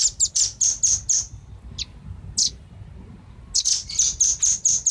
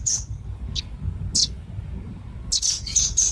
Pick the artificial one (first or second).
second